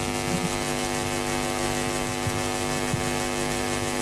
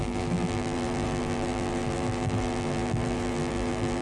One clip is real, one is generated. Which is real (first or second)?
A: first